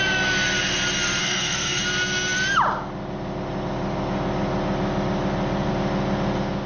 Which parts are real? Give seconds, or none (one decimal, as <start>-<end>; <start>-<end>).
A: 0.0-1.2; 1.8-6.7